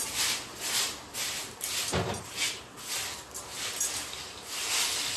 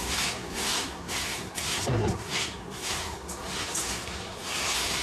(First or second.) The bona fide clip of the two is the first